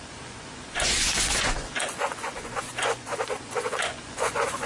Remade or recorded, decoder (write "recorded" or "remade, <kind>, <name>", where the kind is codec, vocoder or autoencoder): remade, vocoder, Vocos